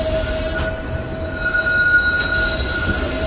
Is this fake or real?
real